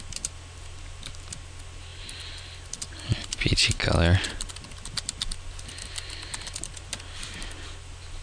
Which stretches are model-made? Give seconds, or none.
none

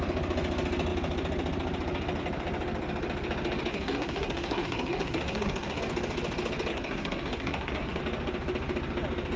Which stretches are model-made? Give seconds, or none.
3.7-5.8; 6.7-8.0

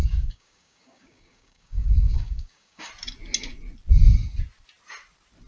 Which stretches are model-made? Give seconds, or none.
0.0-2.9

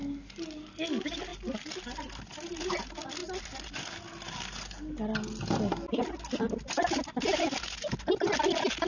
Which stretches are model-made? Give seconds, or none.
none